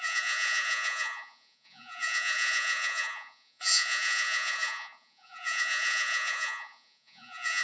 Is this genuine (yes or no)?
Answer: no